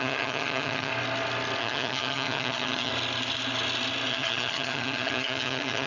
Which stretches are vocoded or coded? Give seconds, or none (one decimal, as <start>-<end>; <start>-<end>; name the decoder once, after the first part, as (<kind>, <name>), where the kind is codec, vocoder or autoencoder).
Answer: 0.0-0.9 (vocoder, HiFi-GAN); 1.6-2.9; 4.1-5.9